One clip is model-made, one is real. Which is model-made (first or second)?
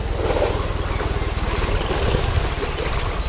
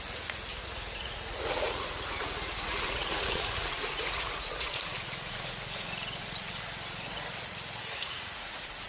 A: second